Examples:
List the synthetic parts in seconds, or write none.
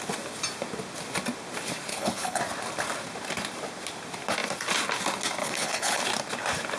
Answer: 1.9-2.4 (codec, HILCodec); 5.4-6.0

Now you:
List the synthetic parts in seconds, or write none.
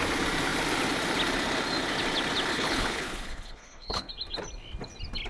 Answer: 2.5-4.1 (codec, HILCodec)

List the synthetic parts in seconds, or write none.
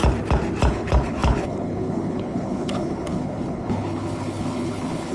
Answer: 0.7-5.1 (codec, HILCodec)